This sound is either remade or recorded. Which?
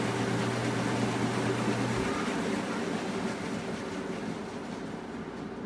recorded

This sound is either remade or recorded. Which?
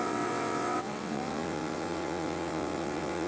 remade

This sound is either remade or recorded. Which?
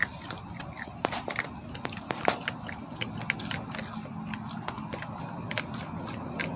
recorded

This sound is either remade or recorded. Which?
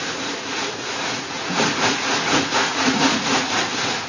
remade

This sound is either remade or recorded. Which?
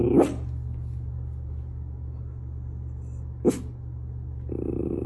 recorded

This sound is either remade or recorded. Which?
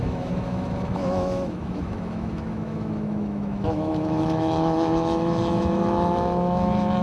remade